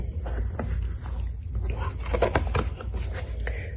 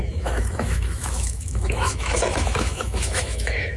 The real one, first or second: first